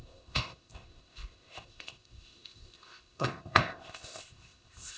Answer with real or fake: fake